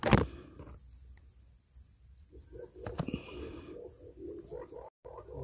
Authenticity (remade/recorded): recorded